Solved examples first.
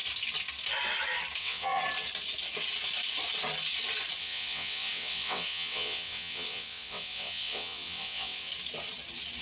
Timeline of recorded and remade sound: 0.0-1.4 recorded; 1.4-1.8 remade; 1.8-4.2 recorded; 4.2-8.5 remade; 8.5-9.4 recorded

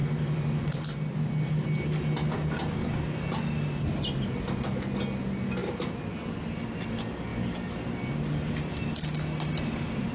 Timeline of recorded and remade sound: 0.0-10.1 recorded

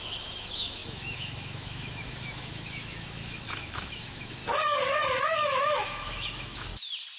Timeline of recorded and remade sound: 0.0-4.4 remade; 4.4-5.2 recorded; 5.2-6.7 remade; 6.7-7.2 recorded